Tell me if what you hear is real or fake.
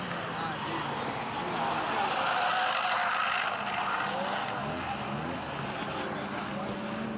real